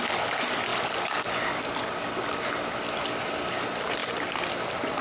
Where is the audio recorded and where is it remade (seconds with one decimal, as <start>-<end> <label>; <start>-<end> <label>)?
0.0-5.0 recorded

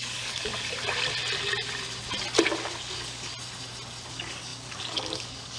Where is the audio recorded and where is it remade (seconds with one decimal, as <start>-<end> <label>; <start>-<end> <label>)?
0.0-0.5 remade; 0.5-2.4 recorded; 2.4-3.3 remade; 3.3-4.1 recorded; 4.1-5.6 remade

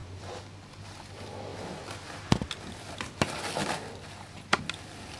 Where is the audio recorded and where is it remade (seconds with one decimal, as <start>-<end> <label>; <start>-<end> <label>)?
0.0-0.5 remade; 0.5-1.5 recorded; 1.5-4.6 remade; 4.6-5.2 recorded